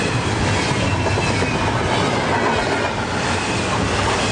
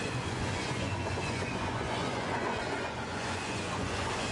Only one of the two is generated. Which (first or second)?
second